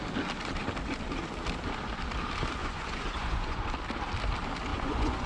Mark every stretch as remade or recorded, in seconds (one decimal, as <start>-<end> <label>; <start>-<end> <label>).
0.0-2.6 recorded; 2.6-3.6 remade; 3.6-4.7 recorded; 4.7-5.3 remade